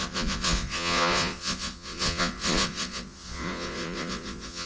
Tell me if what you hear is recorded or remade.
remade